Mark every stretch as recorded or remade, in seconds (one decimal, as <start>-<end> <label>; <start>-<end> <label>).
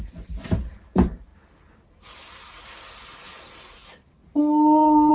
0.0-1.3 remade; 1.3-3.4 recorded; 3.4-3.8 remade; 3.8-5.1 recorded